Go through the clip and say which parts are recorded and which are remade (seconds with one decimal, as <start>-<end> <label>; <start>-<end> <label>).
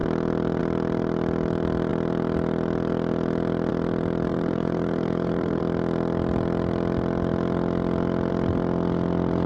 0.0-4.3 recorded; 4.3-5.6 remade; 5.6-9.5 recorded